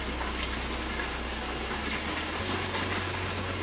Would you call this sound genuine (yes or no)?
yes